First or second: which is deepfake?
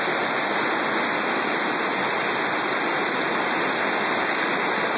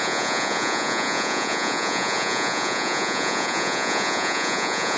second